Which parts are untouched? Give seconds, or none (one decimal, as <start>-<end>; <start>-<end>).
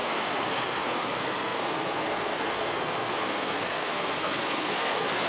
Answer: none